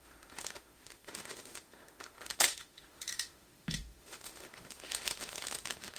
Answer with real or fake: fake